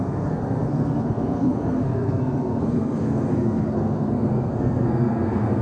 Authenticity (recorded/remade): remade